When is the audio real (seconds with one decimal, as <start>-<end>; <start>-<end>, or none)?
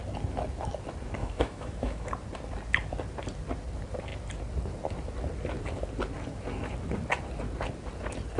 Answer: 0.0-1.2; 2.1-8.4